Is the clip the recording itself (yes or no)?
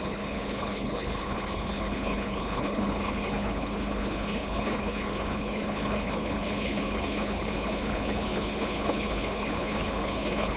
no